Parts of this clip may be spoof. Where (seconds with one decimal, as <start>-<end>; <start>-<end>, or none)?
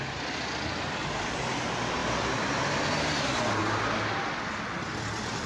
0.0-5.5